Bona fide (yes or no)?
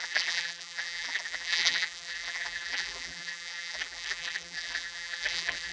no